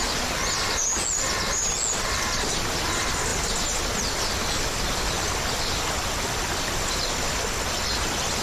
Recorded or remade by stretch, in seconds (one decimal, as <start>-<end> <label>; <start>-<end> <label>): 0.0-8.4 recorded